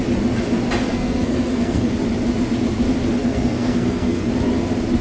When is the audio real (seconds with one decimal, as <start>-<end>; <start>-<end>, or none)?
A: 0.0-0.9; 1.9-3.2; 4.3-5.0